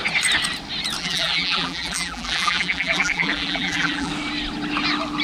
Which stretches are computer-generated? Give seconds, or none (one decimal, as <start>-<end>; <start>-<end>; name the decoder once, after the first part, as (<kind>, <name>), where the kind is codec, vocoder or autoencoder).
1.0-4.1 (vocoder, BigVGAN v2)